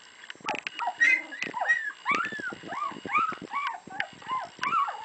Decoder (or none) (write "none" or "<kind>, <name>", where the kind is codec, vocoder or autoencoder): none